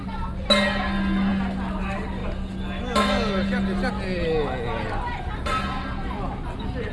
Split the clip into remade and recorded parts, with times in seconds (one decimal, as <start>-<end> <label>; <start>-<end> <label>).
0.0-6.9 recorded